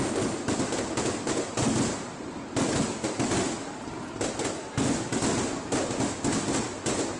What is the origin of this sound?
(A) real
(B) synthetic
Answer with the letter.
A